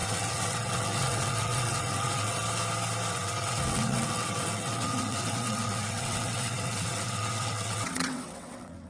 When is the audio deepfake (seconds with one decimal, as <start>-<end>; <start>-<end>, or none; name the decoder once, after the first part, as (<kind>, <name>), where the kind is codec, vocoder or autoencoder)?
0.0-2.4 (vocoder, WaveNeXt); 3.1-8.9